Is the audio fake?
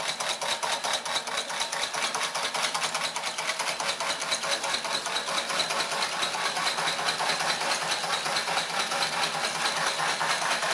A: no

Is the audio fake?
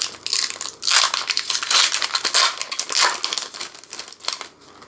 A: no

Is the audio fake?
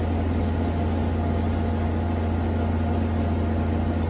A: no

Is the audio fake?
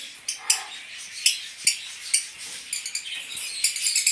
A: no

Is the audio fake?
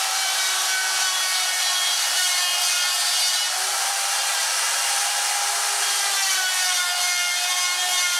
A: yes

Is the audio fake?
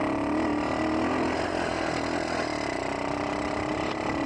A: no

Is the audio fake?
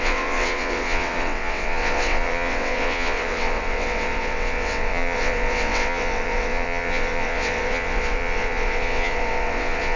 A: yes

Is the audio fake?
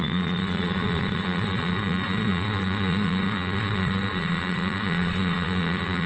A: yes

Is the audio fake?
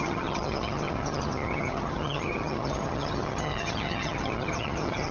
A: yes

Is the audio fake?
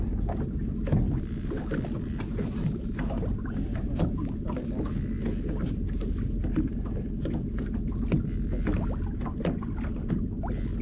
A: no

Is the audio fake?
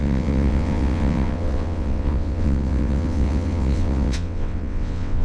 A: yes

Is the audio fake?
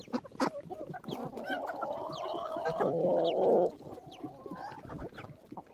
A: no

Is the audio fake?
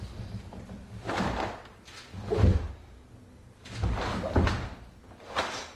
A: no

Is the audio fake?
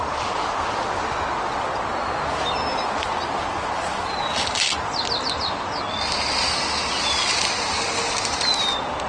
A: no